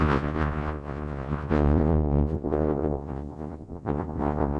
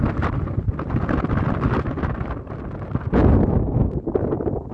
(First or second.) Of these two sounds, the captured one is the second